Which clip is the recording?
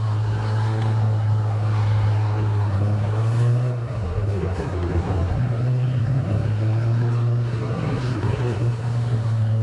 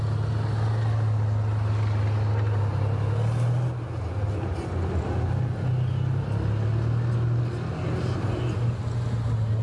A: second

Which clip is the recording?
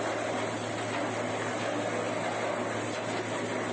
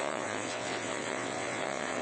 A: first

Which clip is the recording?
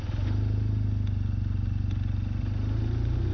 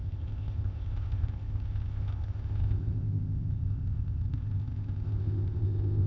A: first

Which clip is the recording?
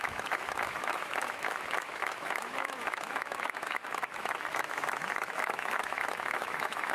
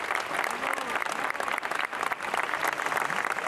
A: second